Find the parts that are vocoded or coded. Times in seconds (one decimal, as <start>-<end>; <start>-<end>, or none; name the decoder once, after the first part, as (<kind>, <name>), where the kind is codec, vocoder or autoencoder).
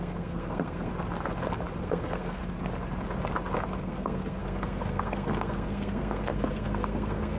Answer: 0.0-0.9 (codec, SNAC); 1.8-2.4; 3.8-7.4